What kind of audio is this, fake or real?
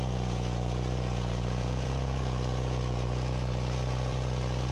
fake